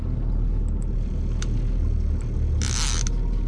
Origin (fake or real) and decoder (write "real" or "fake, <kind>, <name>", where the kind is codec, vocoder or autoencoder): real